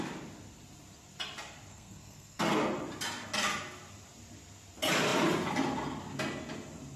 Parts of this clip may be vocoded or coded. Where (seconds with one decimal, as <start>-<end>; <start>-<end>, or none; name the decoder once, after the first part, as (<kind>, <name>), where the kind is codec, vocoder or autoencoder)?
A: 1.7-2.5 (codec, SNAC)